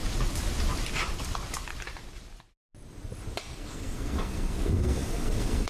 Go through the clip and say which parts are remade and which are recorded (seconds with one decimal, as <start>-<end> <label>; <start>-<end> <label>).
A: 0.0-3.4 recorded; 3.4-5.7 remade